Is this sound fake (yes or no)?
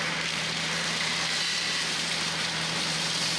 yes